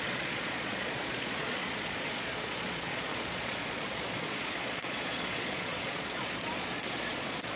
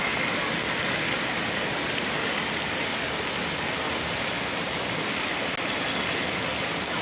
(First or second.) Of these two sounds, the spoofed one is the first